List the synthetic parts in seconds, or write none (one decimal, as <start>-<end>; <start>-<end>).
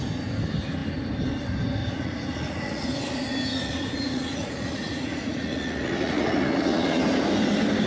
1.8-3.0; 3.5-7.0